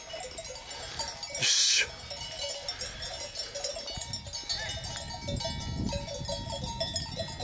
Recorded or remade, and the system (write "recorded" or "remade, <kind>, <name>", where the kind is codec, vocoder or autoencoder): recorded